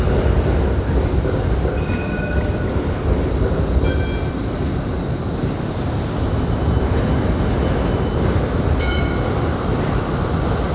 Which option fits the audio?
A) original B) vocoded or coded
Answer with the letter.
A